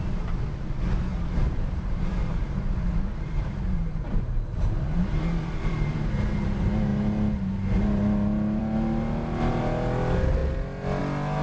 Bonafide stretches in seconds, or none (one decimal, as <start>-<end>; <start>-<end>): 0.0-1.1; 6.1-11.4